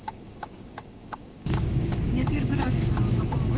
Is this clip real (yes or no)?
no